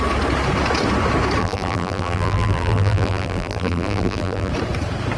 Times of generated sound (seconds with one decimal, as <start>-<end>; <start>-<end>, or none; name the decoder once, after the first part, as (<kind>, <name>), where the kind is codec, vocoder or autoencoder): 1.4-4.5 (vocoder, BigVGAN v2)